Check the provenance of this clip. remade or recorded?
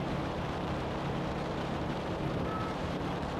remade